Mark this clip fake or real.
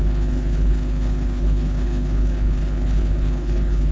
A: fake